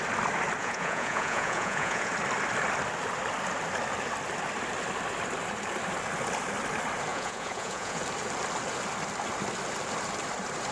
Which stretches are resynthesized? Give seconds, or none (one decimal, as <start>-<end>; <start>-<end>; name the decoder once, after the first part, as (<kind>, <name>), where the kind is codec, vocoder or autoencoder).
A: 0.6-2.1 (vocoder, Vocos); 7.1-8.0